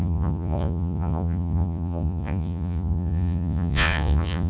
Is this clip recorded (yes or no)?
no